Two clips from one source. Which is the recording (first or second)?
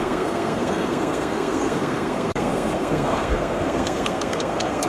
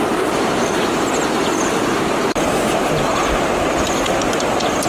second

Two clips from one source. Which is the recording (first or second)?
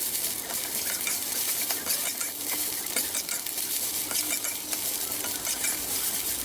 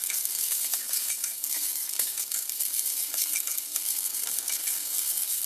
first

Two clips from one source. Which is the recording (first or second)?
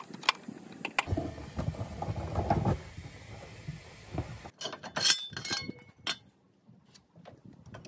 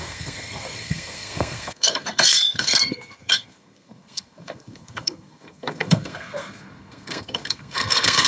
first